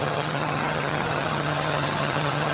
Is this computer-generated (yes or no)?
yes